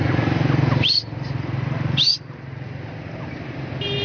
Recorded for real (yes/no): yes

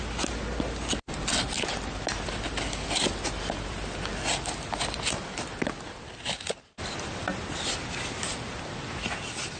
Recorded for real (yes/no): yes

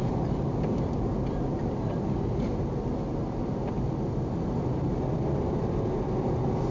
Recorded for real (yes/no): yes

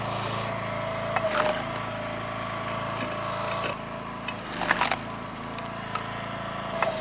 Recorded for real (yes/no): yes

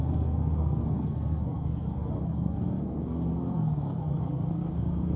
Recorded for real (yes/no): no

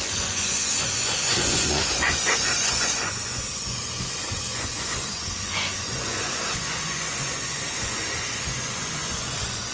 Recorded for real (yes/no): no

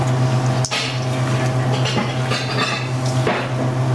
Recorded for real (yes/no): yes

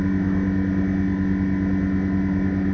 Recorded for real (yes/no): yes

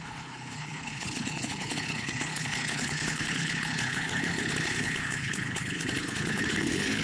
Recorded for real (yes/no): no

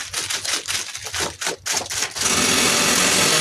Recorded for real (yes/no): yes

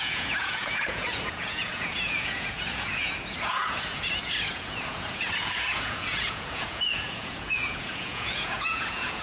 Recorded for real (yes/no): no